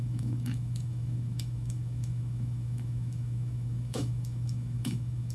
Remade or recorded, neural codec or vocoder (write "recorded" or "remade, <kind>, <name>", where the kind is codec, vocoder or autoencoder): remade, autoencoder, DAC-VAE